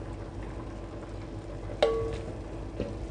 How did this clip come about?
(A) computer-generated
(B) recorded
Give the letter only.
B